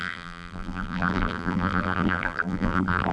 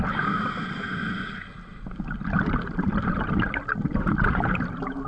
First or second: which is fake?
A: first